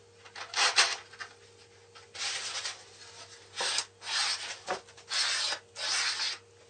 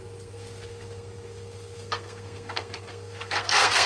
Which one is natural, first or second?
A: first